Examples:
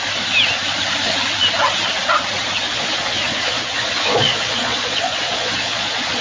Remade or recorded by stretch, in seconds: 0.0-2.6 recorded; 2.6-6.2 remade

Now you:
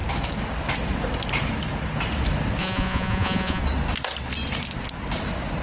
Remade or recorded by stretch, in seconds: 0.0-2.6 recorded; 2.6-3.6 remade; 3.6-5.6 recorded